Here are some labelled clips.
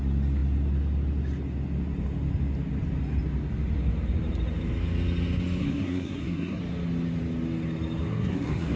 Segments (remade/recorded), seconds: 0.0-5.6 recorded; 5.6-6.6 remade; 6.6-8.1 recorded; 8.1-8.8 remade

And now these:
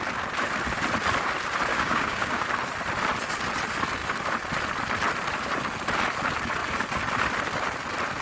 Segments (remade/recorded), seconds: 0.0-1.7 recorded; 1.7-2.4 remade; 2.4-8.2 recorded

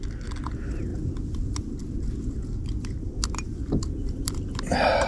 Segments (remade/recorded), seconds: 0.0-5.1 recorded

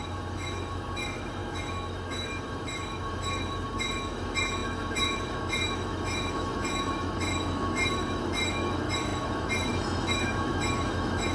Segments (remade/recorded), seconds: 0.0-11.3 remade

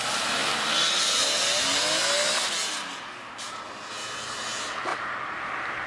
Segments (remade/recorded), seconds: 0.0-4.9 recorded; 4.9-5.4 remade; 5.4-5.9 recorded

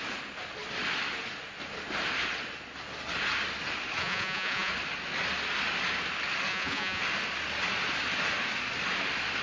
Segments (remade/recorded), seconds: 0.0-4.0 recorded; 4.0-4.7 remade; 4.7-6.5 recorded; 6.5-7.0 remade; 7.0-9.4 recorded

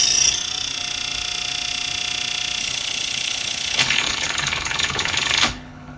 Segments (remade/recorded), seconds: 0.0-2.6 recorded; 2.6-6.0 remade